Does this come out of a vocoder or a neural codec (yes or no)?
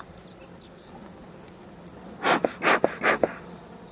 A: no